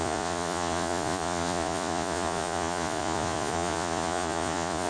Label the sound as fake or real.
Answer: fake